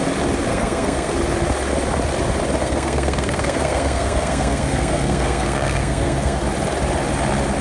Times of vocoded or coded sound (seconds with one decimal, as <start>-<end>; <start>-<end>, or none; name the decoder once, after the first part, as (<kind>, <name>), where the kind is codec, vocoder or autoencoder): 0.5-1.1 (codec, SNAC); 2.6-6.4